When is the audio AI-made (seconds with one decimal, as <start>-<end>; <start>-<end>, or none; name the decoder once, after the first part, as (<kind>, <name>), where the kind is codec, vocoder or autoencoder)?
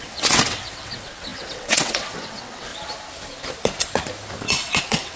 0.0-2.7 (vocoder, WaveNeXt); 4.8-5.2